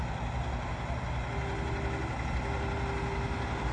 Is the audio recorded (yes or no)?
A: yes